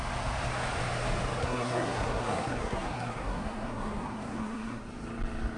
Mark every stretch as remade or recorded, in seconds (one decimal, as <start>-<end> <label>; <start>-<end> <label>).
0.0-1.4 recorded; 1.4-4.8 remade; 4.8-5.6 recorded